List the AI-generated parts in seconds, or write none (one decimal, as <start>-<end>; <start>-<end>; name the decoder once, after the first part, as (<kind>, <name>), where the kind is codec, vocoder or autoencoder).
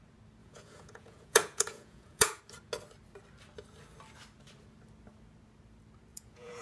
0.4-2.4 (vocoder, Vocos); 6.1-6.6